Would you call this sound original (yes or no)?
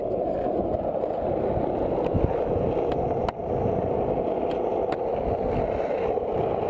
yes